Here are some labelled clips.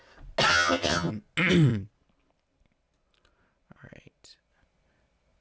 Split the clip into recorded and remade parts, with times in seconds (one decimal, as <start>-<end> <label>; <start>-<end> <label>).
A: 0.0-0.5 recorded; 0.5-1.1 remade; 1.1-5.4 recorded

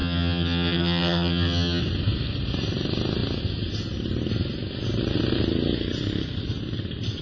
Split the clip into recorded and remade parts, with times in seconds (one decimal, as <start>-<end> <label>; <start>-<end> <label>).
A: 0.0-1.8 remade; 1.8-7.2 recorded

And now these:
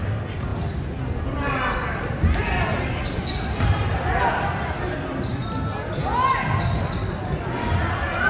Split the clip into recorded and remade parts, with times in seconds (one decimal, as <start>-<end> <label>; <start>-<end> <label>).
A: 0.0-8.3 recorded

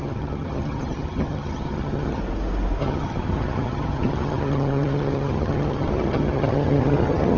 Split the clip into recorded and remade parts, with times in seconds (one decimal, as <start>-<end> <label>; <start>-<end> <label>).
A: 0.0-2.2 remade; 2.2-2.8 recorded; 2.8-7.4 remade